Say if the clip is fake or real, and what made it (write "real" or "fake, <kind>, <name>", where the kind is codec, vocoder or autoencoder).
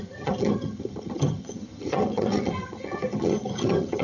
fake, vocoder, HiFi-GAN